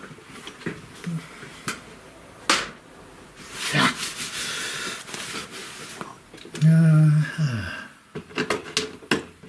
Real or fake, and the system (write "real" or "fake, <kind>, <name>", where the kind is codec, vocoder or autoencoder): real